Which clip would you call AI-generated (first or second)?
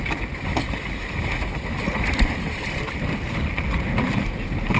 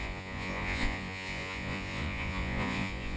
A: second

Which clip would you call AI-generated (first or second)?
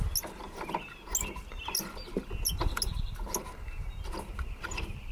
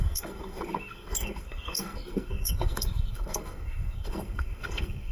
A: second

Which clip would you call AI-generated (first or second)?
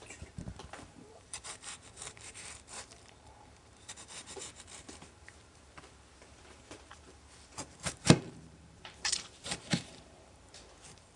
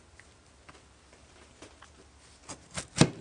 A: first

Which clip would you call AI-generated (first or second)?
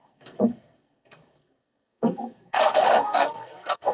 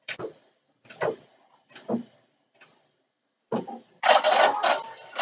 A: first